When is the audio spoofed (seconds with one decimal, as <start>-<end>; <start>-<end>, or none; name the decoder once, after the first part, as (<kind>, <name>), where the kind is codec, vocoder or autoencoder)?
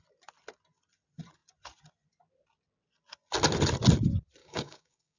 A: 4.4-5.2 (codec, DAC)